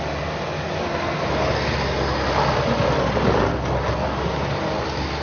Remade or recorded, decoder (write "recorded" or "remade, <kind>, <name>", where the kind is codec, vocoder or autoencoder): recorded